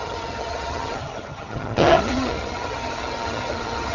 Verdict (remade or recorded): remade